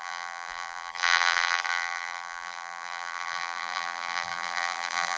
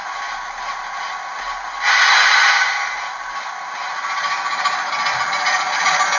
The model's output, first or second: first